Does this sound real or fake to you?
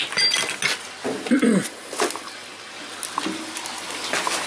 real